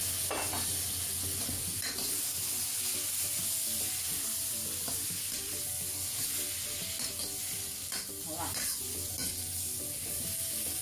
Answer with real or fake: real